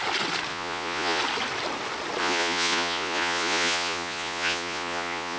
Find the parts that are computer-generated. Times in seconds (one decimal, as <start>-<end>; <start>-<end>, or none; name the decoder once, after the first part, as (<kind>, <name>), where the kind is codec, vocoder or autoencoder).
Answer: 0.5-1.2 (vocoder, Vocos); 2.2-5.4